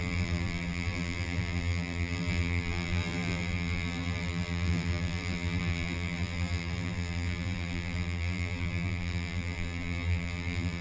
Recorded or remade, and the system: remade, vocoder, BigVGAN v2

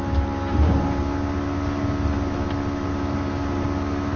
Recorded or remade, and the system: recorded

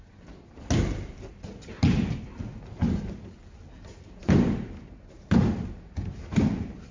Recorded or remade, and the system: recorded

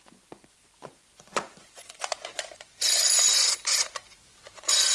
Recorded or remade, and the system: remade, vocoder, Vocos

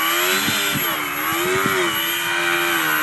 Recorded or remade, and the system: recorded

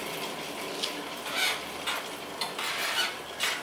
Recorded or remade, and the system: recorded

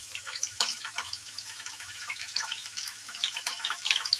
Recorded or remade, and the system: remade, autoencoder, DAC-VAE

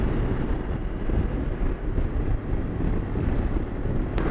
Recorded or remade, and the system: recorded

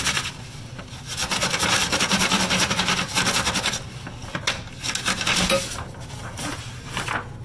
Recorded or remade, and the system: recorded